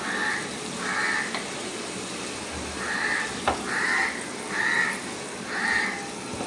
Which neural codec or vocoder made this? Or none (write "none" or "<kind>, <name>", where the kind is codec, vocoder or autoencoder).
none